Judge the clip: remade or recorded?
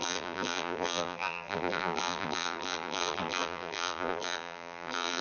remade